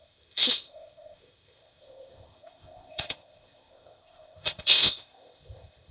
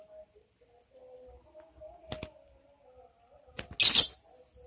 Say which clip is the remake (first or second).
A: first